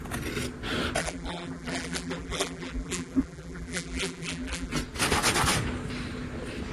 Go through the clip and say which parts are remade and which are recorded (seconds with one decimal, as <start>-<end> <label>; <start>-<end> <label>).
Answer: 0.0-1.0 recorded; 1.0-4.7 remade; 4.7-6.7 recorded